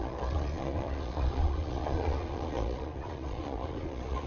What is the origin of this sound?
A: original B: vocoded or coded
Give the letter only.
B